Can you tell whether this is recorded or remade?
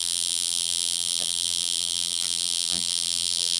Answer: remade